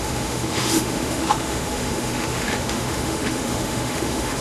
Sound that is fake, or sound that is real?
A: fake